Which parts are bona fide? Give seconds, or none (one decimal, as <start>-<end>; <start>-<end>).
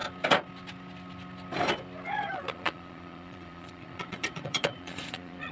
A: 0.0-2.3